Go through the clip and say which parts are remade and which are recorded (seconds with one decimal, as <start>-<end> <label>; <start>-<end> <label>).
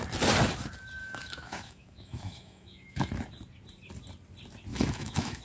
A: 0.0-1.0 recorded; 1.0-3.1 remade; 3.1-4.7 recorded; 4.7-5.4 remade